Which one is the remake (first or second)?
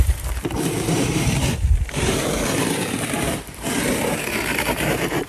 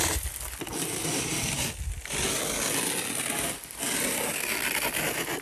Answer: first